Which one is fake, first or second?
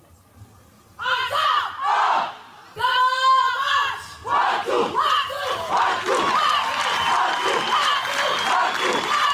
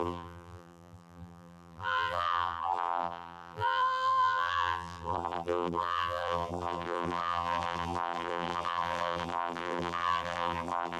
second